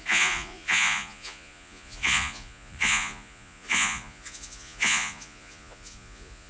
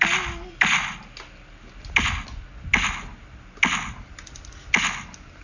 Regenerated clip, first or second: first